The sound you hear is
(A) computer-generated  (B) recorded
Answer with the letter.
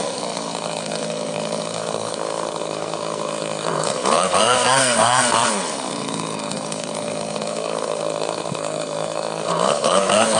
A